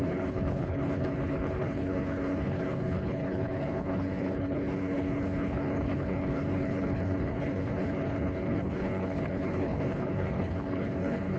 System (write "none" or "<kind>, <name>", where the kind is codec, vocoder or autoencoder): codec, HILCodec